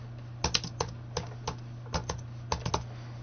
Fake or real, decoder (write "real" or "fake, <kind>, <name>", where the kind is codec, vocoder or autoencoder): real